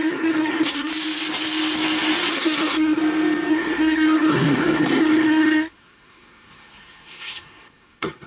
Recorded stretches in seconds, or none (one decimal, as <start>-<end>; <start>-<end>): 0.9-2.3; 3.0-3.5